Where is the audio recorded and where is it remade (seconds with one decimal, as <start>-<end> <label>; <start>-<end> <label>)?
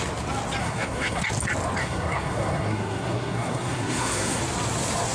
0.0-0.6 recorded; 0.6-1.2 remade; 1.2-1.8 recorded; 1.8-4.4 remade; 4.4-5.1 recorded